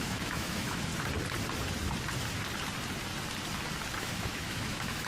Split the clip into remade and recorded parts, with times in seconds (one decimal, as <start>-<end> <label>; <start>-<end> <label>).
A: 0.0-0.9 remade; 0.9-4.0 recorded; 4.0-5.1 remade